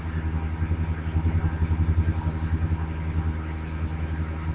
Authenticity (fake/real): real